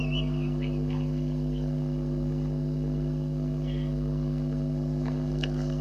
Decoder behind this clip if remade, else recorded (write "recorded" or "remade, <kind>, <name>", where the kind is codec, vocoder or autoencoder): remade, codec, SNAC